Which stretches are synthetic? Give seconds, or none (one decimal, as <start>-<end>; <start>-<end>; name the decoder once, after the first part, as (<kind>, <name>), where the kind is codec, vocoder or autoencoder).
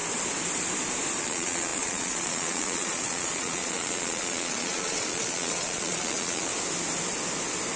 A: 1.2-6.5 (vocoder, Vocos)